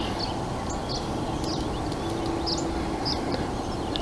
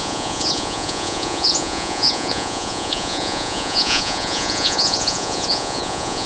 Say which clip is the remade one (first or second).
second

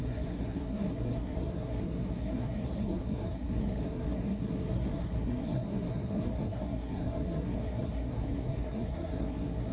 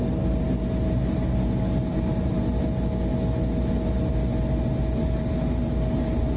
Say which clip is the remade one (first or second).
first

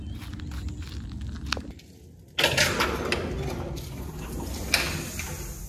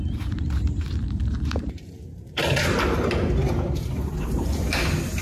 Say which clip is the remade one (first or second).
second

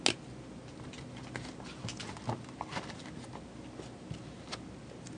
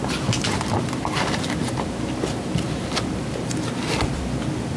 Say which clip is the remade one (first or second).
second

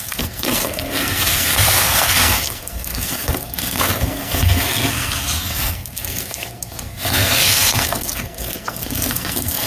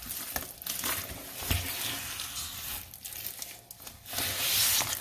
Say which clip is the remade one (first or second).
first